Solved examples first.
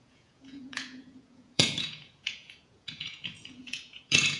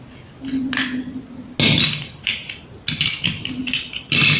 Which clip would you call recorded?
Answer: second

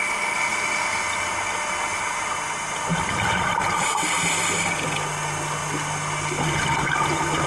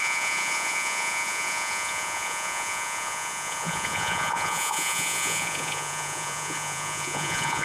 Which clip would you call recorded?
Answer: first